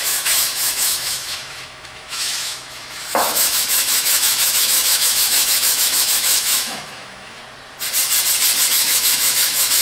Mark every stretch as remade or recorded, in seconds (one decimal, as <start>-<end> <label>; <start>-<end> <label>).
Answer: 0.0-7.4 remade; 7.4-8.7 recorded; 8.7-9.8 remade